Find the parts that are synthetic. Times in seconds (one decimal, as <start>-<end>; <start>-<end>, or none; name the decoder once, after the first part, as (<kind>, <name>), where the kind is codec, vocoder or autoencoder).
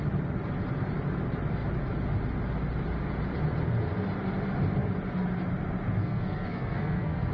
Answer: 6.0-7.3 (codec, SNAC)